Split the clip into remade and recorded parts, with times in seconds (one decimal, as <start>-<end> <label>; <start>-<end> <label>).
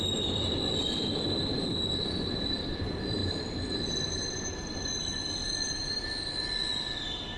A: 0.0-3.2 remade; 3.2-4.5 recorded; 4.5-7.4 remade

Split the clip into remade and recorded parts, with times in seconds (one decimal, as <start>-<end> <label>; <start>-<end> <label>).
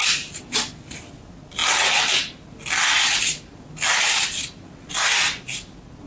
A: 0.0-6.1 recorded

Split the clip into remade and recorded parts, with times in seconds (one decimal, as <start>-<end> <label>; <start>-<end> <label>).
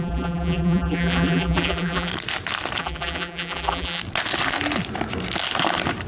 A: 0.0-2.1 remade; 2.1-2.8 recorded; 2.8-4.0 remade; 4.0-6.1 recorded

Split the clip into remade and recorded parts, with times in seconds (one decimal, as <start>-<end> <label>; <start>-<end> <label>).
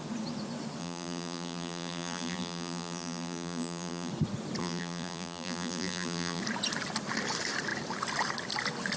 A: 0.0-0.8 recorded; 0.8-4.1 remade; 4.1-4.6 recorded; 4.6-6.4 remade; 6.4-9.0 recorded